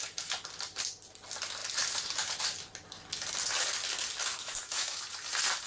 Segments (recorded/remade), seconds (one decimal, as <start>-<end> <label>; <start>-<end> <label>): 0.0-4.3 recorded; 4.3-5.0 remade; 5.0-5.7 recorded